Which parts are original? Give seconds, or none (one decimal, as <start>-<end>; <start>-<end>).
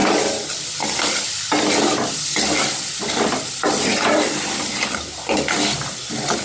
0.0-6.4